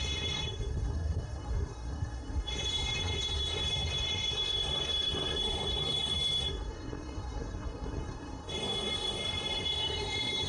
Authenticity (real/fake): fake